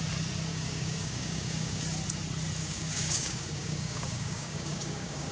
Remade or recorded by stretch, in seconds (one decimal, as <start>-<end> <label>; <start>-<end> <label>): 0.0-0.5 recorded; 0.5-1.8 remade; 1.8-2.6 recorded; 2.6-5.3 remade